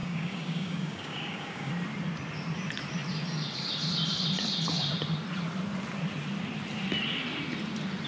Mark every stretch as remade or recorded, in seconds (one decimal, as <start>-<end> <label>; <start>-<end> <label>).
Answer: 0.0-1.7 remade; 1.7-8.1 recorded